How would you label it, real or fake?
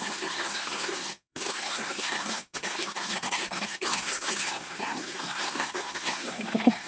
fake